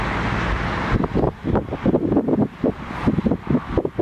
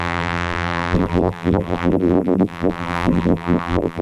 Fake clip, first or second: second